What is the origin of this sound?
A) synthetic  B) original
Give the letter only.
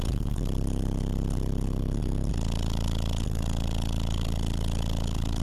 B